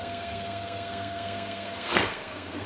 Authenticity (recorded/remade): remade